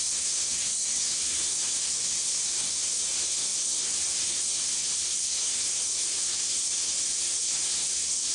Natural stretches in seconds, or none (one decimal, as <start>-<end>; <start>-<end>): none